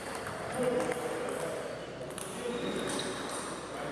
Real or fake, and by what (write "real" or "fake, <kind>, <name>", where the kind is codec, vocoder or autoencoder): real